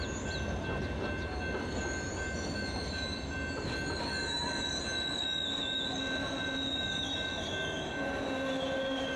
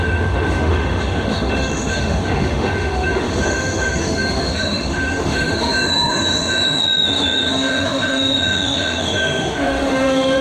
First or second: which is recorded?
first